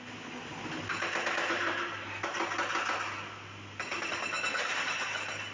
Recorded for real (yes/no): yes